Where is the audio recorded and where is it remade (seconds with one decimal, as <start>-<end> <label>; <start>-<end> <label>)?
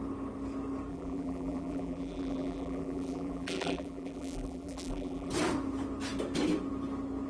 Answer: 0.0-0.9 recorded; 0.9-5.3 remade; 5.3-7.3 recorded